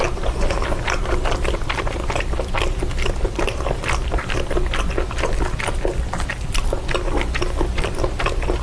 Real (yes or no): yes